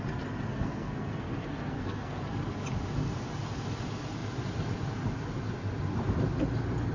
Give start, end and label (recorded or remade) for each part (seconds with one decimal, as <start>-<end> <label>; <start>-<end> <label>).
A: 0.0-0.5 recorded; 0.5-2.2 remade; 2.2-6.9 recorded